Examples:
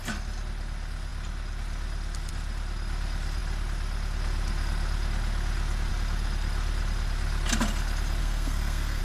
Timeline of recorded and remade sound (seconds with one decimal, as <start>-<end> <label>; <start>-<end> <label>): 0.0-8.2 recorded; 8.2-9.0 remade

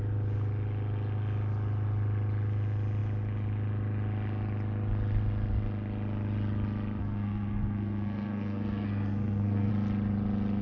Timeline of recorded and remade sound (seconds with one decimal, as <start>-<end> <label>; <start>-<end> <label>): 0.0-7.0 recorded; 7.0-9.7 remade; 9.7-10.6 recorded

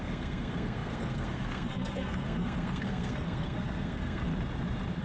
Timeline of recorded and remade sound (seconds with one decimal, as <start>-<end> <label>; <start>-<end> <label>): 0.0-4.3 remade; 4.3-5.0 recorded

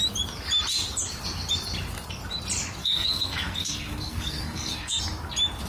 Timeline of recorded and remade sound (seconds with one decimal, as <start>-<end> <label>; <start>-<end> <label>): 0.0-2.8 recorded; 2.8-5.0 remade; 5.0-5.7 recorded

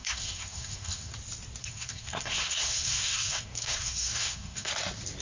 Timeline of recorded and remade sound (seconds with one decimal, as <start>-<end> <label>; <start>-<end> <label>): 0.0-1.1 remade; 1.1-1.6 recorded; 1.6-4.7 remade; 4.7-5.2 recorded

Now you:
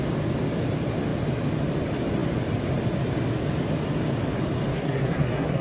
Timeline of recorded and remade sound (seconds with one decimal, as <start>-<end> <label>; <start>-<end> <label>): 0.0-4.7 recorded; 4.7-5.6 remade

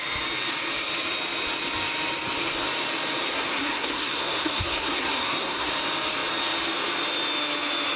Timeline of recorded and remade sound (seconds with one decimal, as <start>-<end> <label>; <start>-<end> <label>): 0.0-3.2 recorded; 3.2-5.7 remade; 5.7-8.0 recorded